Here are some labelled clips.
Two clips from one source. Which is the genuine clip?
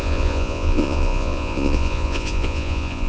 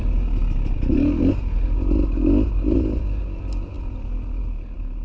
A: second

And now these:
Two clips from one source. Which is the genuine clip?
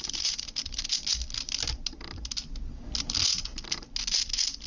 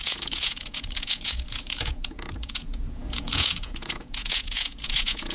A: first